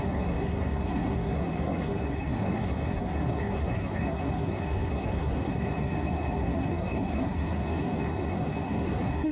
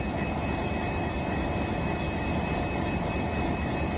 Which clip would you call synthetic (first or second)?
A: first